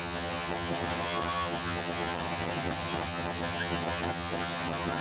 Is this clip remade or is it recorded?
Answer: remade